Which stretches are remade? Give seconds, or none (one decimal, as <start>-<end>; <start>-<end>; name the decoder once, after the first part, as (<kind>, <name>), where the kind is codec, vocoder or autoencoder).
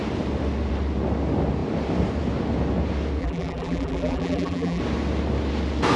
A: 3.2-4.8 (vocoder, BigVGAN v2)